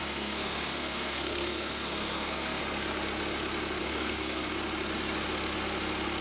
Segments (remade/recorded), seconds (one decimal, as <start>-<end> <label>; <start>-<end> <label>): 0.0-2.6 remade; 2.6-3.8 recorded; 3.8-4.5 remade; 4.5-6.2 recorded